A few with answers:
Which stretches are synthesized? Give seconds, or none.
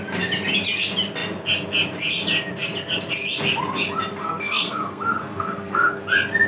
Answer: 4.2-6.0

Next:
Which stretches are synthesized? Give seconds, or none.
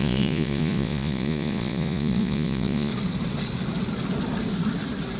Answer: 0.0-2.9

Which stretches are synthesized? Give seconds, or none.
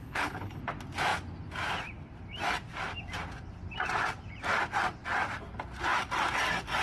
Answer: 0.0-0.6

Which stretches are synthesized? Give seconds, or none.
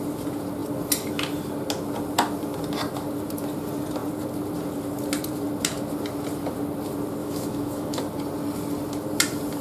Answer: 7.2-8.0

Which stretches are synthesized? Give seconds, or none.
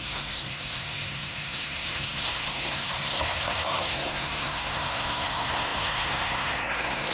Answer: 0.0-7.1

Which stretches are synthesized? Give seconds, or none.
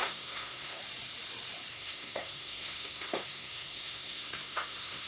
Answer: 0.0-0.8; 1.7-5.1